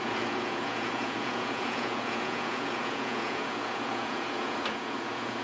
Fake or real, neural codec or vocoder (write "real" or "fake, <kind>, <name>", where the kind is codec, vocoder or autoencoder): fake, vocoder, Vocos